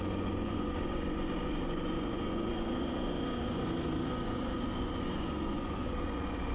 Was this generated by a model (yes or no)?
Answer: yes